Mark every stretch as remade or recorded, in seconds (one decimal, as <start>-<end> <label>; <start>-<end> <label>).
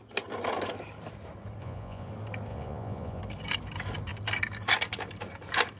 0.0-1.6 recorded; 1.6-2.1 remade; 2.1-2.5 recorded; 2.5-3.2 remade; 3.2-5.8 recorded